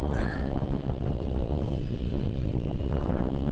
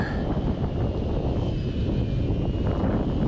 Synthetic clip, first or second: first